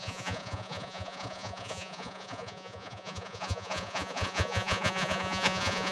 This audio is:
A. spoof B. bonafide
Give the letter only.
A